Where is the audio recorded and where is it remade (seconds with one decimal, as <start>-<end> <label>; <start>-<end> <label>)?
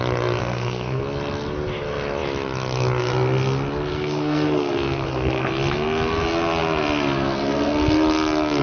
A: 0.0-0.4 recorded; 0.4-1.0 remade; 1.0-3.9 recorded; 3.9-5.4 remade; 5.4-8.6 recorded